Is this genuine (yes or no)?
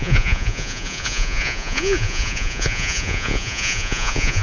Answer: no